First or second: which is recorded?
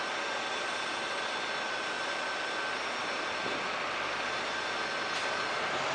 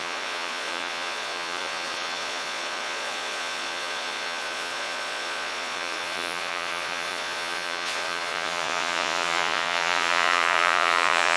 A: first